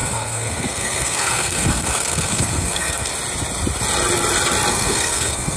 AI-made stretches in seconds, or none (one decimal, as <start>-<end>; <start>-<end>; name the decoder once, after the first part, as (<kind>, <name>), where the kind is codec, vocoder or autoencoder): 0.0-3.1 (codec, SNAC); 4.7-5.6